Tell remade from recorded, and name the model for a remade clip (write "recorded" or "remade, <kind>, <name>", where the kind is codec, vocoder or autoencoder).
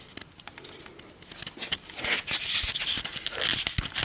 recorded